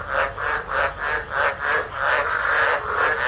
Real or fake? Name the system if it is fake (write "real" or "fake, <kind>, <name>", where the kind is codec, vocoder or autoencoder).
real